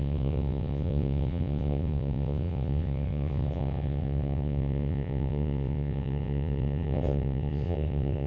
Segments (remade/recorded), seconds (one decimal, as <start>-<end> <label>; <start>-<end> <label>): 0.0-8.3 remade